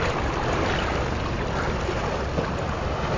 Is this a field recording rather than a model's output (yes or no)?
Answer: yes